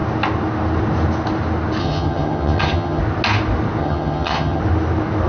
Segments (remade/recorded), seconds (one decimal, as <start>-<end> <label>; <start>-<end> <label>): 0.0-1.8 recorded; 1.8-3.0 remade; 3.0-3.8 recorded; 3.8-4.6 remade; 4.6-5.3 recorded